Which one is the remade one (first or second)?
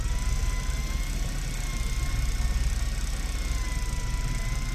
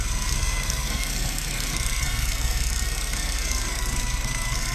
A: second